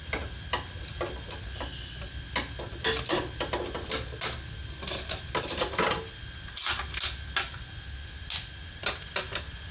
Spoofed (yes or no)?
no